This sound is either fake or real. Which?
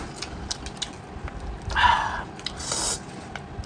real